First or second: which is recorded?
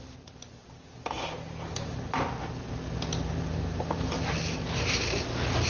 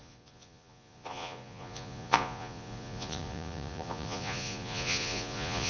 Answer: first